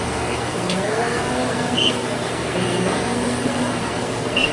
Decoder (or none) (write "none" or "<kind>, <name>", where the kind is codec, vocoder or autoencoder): codec, SNAC